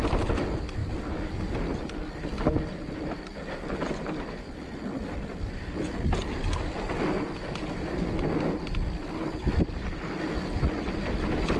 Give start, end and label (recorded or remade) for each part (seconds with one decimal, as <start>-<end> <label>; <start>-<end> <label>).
0.0-11.6 recorded